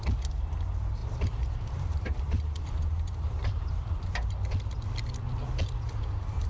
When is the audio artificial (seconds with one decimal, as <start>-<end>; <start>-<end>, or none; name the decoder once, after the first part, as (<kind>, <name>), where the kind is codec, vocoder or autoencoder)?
1.0-4.1 (vocoder, BigVGAN v2)